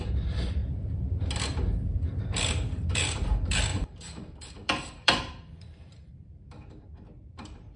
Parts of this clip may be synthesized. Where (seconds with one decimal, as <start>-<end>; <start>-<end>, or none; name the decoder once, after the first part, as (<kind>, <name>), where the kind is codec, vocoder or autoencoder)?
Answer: 0.0-0.6 (vocoder, BigVGAN v2); 2.2-7.8